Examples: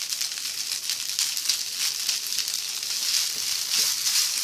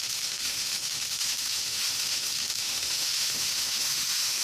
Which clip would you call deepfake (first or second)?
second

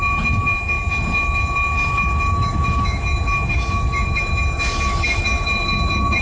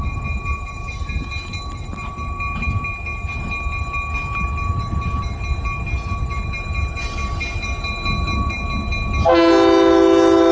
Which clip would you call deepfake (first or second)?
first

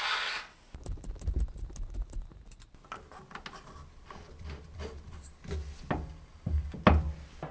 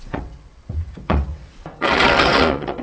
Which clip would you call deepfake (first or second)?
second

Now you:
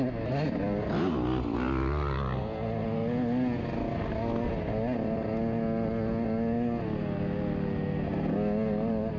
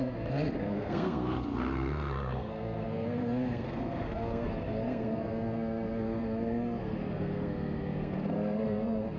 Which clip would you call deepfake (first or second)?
second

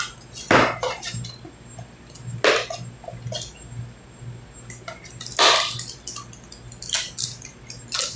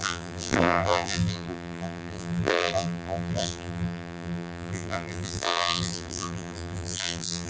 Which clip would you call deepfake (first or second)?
second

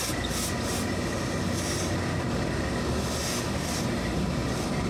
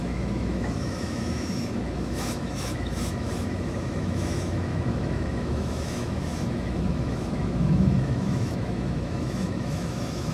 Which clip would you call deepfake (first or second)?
second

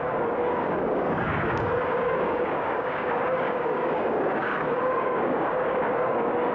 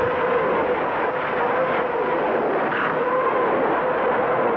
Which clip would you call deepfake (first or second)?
first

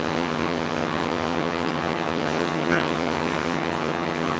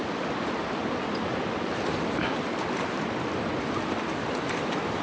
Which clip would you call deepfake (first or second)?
first